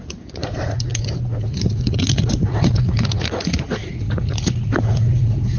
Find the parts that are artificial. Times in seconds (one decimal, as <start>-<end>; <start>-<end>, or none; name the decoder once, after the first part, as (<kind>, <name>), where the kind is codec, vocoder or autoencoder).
0.0-5.6 (vocoder, Vocos)